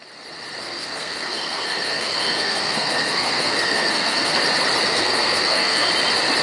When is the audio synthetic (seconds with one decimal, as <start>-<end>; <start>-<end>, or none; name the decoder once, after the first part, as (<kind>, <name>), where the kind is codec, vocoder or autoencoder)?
0.6-4.4 (codec, SNAC); 4.9-5.9

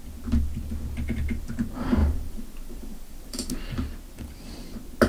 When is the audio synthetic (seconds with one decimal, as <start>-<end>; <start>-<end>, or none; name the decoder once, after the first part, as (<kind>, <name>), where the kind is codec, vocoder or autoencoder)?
2.0-3.5 (vocoder, BigVGAN v2)

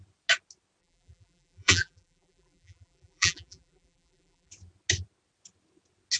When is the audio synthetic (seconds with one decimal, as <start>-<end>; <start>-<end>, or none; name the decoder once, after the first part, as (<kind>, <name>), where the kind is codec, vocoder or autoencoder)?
0.8-4.5 (vocoder, BigVGAN v2)

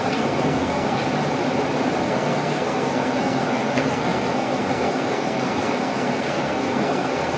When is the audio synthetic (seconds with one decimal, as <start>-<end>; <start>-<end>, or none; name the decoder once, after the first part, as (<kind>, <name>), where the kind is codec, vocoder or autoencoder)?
0.0-1.0 (codec, SNAC); 2.0-7.4

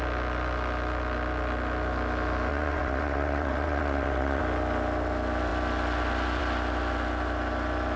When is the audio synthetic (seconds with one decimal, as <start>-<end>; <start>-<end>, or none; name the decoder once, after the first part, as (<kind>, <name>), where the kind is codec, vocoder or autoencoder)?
2.5-4.4 (vocoder, WaveNeXt)

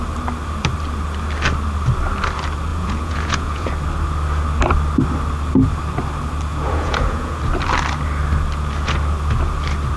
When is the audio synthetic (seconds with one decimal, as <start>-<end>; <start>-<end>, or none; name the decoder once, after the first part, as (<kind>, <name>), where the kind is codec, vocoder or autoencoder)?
2.7-3.7 (vocoder, Vocos); 6.5-7.4

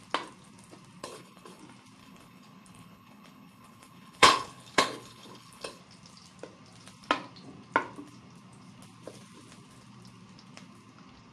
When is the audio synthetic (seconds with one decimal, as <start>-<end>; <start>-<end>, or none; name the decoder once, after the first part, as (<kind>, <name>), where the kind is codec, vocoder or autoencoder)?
1.0-1.6 (codec, HILCodec); 2.0-5.8

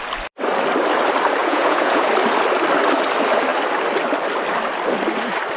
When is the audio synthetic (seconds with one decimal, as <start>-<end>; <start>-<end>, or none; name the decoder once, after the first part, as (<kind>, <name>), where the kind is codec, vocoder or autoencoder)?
1.4-2.1 (vocoder, Vocos)